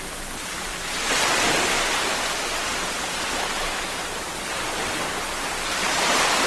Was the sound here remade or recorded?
recorded